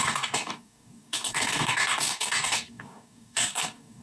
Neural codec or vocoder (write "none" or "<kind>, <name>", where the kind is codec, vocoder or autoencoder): codec, DAC